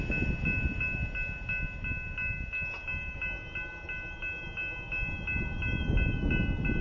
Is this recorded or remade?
recorded